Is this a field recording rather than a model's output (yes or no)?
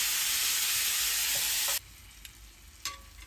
yes